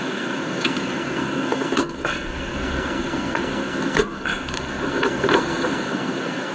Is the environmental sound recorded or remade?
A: remade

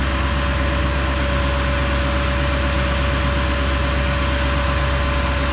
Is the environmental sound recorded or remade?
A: recorded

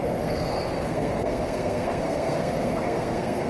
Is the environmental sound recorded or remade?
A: remade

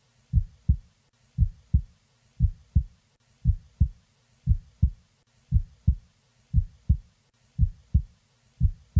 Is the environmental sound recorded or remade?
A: recorded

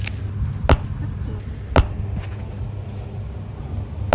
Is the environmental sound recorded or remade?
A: recorded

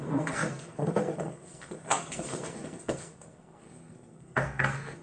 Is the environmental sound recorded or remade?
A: remade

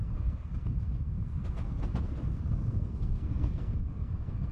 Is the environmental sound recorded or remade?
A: remade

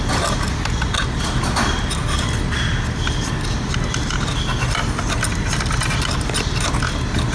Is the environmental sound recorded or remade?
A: recorded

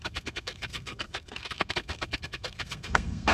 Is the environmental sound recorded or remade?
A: remade